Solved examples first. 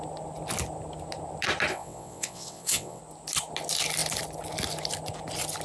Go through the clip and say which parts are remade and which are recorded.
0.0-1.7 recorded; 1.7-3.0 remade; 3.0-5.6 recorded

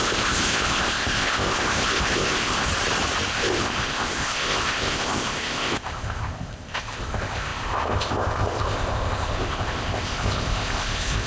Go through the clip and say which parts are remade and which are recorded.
0.0-2.7 remade; 2.7-3.3 recorded; 3.3-11.3 remade

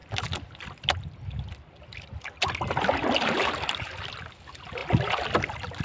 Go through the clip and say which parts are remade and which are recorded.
0.0-5.8 recorded